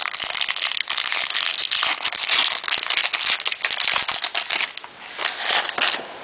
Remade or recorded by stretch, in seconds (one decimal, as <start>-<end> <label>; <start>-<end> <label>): 0.0-6.2 recorded